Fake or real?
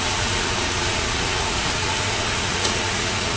fake